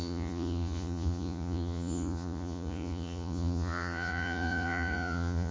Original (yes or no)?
no